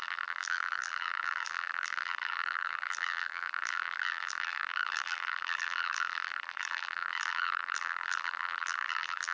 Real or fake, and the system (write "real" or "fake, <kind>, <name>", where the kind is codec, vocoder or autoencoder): fake, vocoder, BigVGAN v2